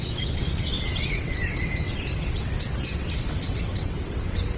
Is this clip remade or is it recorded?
remade